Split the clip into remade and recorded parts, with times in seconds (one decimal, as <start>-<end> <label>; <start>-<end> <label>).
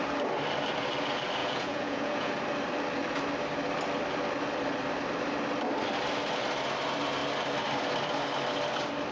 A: 0.0-1.4 recorded; 1.4-2.3 remade; 2.3-9.1 recorded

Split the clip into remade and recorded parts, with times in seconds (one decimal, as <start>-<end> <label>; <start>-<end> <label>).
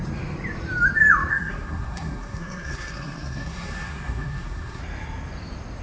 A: 0.0-1.3 recorded; 1.3-4.8 remade; 4.8-5.8 recorded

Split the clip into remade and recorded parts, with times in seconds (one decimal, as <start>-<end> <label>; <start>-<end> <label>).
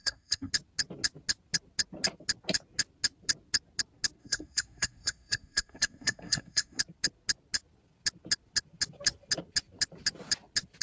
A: 0.0-0.5 remade; 0.5-4.2 recorded; 4.2-6.8 remade; 6.8-10.8 recorded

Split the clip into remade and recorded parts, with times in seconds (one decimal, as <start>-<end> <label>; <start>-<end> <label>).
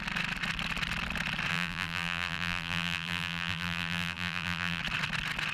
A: 0.0-1.5 recorded; 1.5-4.8 remade; 4.8-5.5 recorded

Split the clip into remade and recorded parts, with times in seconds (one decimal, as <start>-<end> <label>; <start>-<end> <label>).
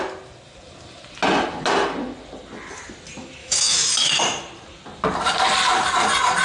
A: 0.0-3.4 recorded; 3.4-4.2 remade; 4.2-6.4 recorded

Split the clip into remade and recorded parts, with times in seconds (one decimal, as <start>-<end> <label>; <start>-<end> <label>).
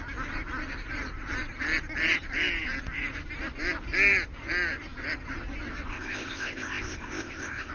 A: 0.0-5.9 recorded; 5.9-7.7 remade